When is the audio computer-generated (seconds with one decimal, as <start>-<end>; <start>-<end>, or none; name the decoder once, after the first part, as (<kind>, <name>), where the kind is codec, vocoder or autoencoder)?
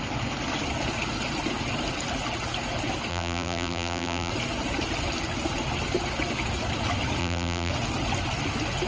3.1-4.3 (vocoder, BigVGAN v2); 7.2-7.7